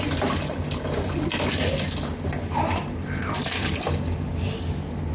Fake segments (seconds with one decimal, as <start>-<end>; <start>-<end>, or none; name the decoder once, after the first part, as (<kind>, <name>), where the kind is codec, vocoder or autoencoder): none